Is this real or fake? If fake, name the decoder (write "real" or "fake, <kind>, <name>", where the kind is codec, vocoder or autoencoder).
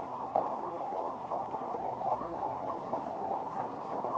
fake, codec, SNAC